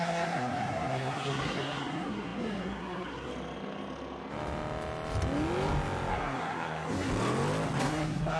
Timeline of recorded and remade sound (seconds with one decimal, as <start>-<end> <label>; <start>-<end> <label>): 0.0-3.3 remade; 3.3-6.1 recorded; 6.1-7.1 remade; 7.1-7.8 recorded; 7.8-8.4 remade